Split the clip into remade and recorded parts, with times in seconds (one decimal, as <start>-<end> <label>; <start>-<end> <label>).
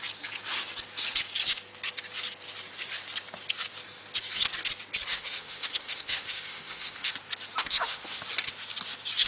0.0-5.1 recorded; 5.1-7.1 remade; 7.1-7.6 recorded; 7.6-8.2 remade; 8.2-9.3 recorded